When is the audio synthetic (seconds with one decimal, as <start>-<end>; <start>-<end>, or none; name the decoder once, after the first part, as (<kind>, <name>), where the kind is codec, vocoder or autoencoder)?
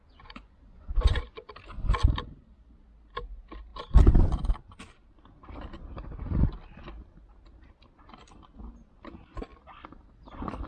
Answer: 0.0-1.5 (vocoder, Vocos)